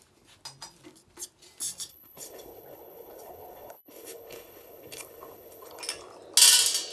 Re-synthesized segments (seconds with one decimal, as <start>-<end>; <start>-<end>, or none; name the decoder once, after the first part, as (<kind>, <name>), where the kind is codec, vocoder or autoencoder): 1.9-5.8 (codec, HILCodec)